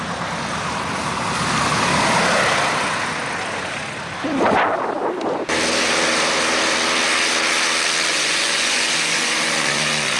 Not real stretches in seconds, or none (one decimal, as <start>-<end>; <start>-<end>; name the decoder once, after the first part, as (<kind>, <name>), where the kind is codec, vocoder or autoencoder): 8.1-10.2 (vocoder, Vocos)